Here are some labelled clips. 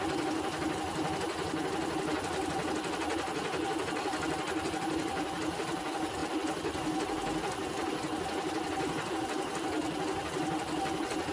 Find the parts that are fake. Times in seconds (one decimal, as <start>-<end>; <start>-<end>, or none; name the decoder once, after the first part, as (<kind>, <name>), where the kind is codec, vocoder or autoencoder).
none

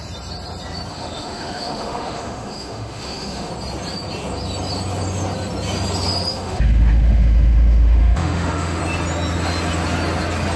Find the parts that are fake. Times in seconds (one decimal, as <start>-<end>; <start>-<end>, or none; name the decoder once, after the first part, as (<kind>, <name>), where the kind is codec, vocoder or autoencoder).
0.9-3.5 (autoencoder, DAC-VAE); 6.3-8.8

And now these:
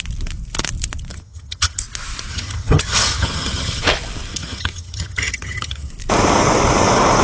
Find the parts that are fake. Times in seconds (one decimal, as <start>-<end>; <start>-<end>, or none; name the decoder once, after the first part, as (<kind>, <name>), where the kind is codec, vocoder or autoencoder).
1.1-1.8 (vocoder, HiFi-GAN); 2.3-3.8; 4.3-5.9

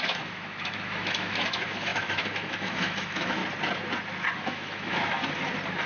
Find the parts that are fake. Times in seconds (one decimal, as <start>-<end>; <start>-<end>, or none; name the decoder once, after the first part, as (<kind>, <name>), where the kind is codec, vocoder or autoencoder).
0.0-3.4 (autoencoder, DAC-VAE); 4.3-5.2

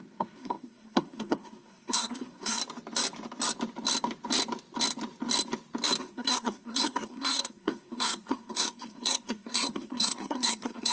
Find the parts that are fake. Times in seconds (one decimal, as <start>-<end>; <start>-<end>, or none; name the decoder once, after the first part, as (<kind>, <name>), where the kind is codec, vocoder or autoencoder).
0.0-2.6 (codec, SNAC); 6.0-10.9

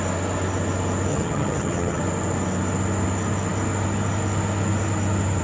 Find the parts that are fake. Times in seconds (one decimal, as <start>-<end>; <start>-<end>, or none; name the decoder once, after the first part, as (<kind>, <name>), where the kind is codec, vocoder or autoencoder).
1.1-2.0 (vocoder, HiFi-GAN)

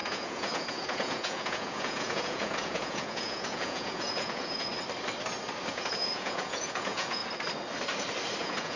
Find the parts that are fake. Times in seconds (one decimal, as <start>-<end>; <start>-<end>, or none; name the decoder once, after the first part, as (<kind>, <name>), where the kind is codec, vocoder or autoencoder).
0.0-4.7 (vocoder, Vocos); 5.7-7.2; 8.4-8.8

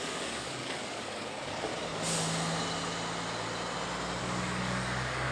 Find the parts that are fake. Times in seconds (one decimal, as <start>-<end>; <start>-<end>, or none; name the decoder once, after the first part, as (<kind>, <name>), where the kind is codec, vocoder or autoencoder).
0.0-1.7 (codec, DAC); 4.2-5.3